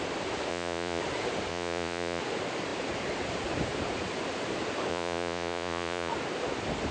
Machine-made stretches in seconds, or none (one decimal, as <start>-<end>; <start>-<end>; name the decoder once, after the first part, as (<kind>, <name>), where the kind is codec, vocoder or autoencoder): 0.5-1.0 (vocoder, Vocos); 1.5-2.2; 4.9-6.1